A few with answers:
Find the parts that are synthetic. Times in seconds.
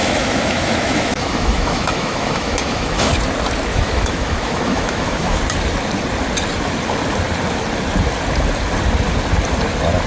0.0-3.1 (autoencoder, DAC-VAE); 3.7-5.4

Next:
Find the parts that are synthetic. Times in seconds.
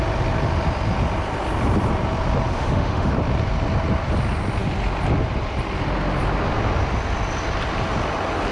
2.5-3.1 (autoencoder, DAC-VAE)